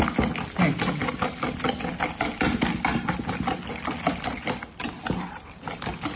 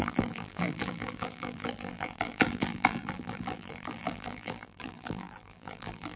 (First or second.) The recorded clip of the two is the first